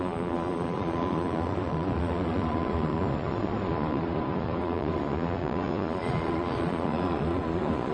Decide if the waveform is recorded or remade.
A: remade